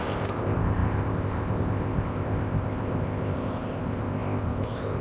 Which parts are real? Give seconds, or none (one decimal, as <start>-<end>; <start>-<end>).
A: none